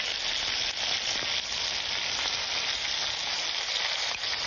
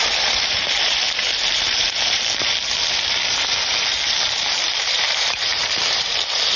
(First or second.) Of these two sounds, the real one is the first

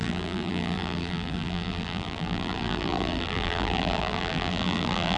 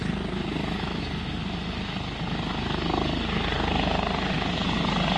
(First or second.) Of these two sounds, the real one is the second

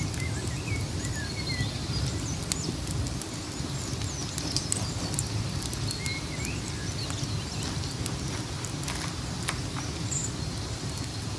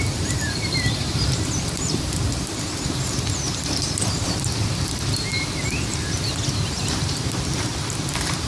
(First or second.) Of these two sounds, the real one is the first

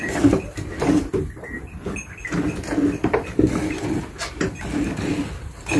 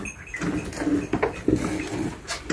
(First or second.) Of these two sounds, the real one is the second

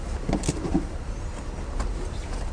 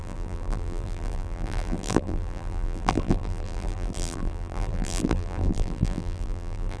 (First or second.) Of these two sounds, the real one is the first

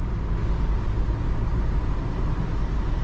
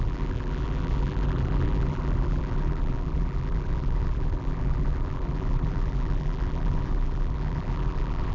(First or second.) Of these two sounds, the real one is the first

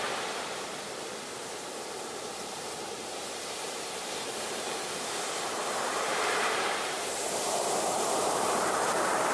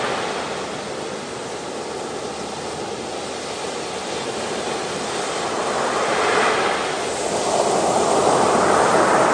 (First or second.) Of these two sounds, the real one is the second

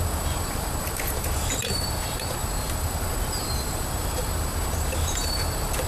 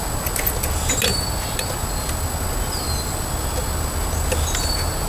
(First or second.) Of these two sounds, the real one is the second